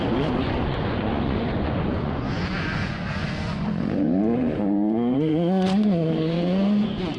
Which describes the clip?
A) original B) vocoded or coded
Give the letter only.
B